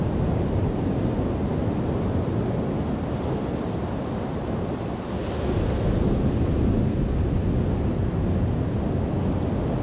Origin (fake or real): real